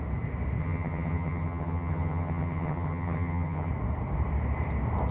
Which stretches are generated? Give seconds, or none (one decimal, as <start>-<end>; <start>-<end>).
0.6-3.7